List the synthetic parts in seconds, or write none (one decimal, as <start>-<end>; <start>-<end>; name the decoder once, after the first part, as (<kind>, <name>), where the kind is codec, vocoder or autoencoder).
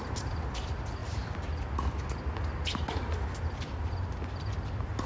none